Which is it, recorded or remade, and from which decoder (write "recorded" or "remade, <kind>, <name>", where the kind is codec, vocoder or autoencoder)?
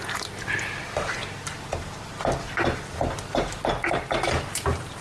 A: recorded